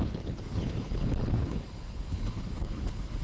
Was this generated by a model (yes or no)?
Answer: yes